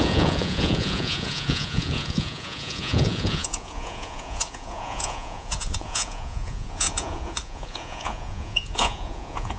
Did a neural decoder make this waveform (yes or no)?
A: yes